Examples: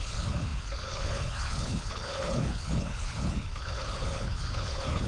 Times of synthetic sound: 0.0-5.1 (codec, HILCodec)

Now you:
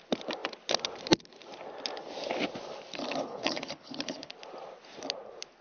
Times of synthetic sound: 3.3-4.3 (codec, HILCodec)